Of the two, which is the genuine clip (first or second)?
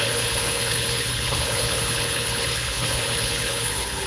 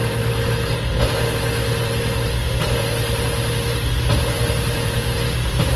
second